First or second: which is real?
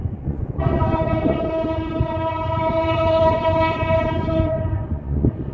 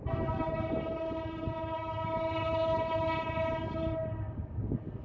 second